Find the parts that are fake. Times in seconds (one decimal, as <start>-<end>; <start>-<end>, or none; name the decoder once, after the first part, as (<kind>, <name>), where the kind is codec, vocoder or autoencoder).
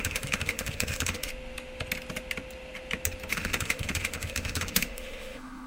0.0-1.3 (autoencoder, DAC-VAE); 3.3-5.7